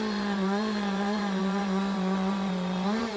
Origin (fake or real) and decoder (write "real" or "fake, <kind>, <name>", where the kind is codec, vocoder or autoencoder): fake, vocoder, BigVGAN v2